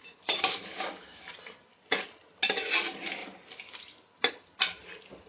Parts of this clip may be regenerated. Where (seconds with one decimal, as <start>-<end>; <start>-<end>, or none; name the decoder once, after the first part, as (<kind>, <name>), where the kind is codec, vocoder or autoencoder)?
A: 0.0-1.3 (autoencoder, DAC-VAE)